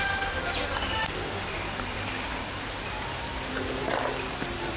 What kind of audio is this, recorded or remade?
recorded